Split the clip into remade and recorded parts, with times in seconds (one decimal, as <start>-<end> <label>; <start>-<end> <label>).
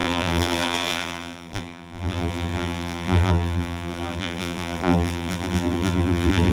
0.0-6.5 remade